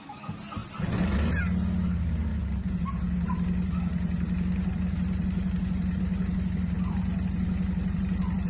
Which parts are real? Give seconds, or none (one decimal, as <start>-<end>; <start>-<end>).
0.0-8.5